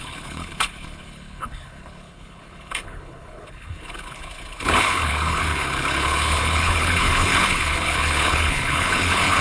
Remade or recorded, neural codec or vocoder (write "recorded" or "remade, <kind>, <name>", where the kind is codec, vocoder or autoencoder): remade, codec, HILCodec